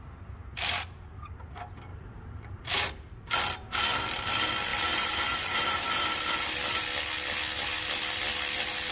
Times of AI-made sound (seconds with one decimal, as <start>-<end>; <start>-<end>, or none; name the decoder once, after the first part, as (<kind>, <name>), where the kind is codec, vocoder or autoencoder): 1.9-2.8 (vocoder, BigVGAN v2); 4.7-6.1